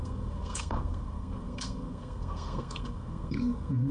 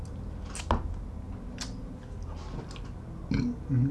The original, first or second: second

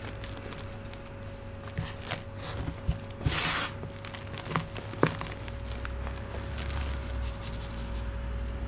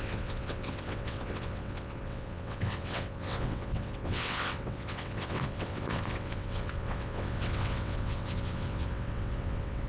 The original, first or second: first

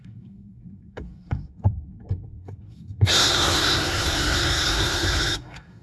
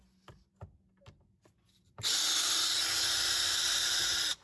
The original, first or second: second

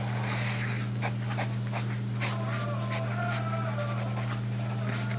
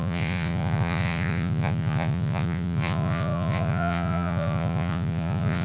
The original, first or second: first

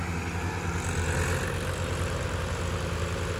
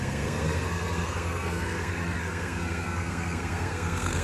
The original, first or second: first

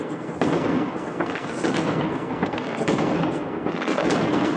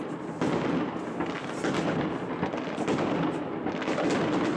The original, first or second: second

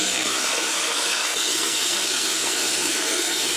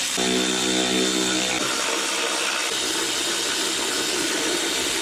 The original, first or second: second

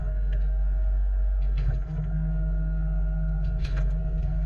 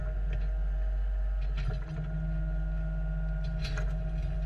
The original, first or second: second